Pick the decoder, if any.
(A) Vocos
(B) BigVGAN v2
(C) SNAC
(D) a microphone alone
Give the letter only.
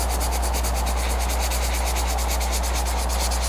D